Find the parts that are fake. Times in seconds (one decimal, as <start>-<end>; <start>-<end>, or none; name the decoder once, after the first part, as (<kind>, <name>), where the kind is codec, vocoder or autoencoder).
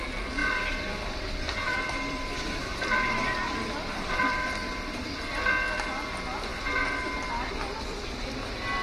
0.4-4.5 (vocoder, BigVGAN v2)